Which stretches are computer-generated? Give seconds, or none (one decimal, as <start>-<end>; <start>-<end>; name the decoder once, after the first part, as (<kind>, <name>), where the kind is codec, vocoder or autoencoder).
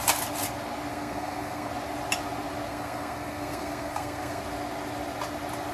0.9-1.7 (codec, SNAC); 2.7-4.4